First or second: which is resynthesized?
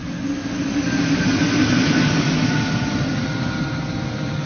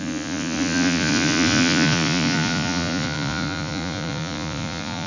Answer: second